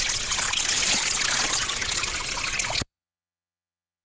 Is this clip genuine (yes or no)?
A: no